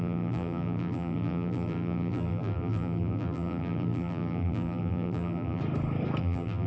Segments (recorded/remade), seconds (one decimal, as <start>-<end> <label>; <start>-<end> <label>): 0.0-5.6 remade; 5.6-6.2 recorded; 6.2-6.7 remade